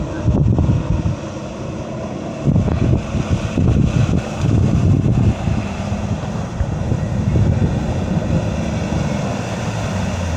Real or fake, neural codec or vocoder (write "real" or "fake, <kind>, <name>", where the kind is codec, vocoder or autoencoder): real